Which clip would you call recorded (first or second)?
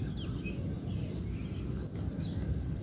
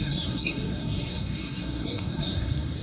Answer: first